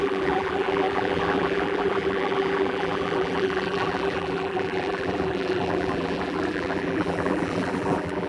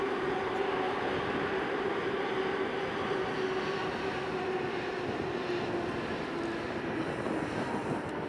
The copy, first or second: first